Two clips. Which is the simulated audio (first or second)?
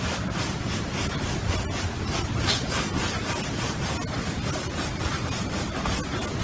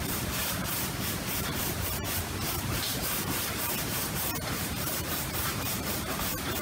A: second